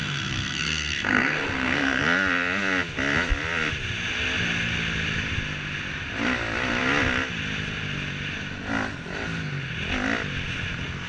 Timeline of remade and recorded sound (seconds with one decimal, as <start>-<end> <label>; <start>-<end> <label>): 0.0-2.0 remade; 2.0-11.1 recorded

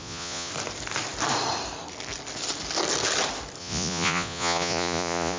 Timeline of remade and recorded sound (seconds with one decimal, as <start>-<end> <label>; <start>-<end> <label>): 0.0-0.5 remade; 0.5-3.6 recorded; 3.6-5.4 remade